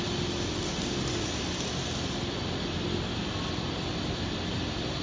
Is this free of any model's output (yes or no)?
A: yes